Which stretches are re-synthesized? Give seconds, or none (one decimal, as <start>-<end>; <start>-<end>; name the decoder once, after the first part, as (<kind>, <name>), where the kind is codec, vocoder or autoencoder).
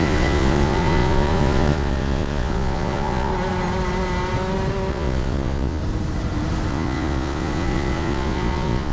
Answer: 0.0-3.3 (vocoder, Vocos); 4.9-5.8; 6.7-8.9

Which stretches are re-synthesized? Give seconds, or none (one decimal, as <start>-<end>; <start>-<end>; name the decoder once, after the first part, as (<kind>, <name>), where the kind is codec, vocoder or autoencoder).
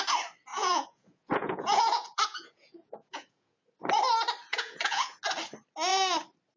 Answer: 0.5-3.6 (vocoder, Vocos); 4.5-5.2